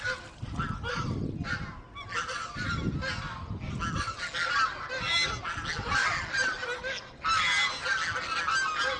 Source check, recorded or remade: recorded